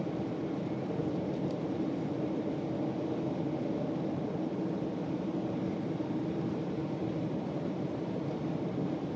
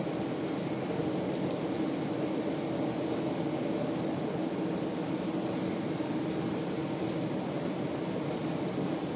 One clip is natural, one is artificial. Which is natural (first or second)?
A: second